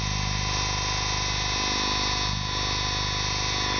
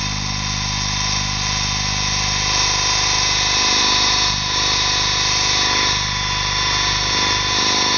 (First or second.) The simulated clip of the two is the second